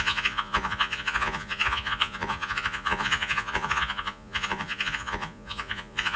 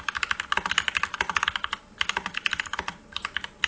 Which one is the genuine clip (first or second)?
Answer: second